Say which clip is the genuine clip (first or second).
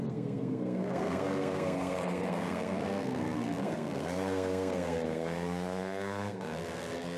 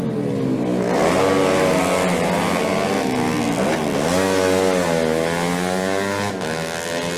second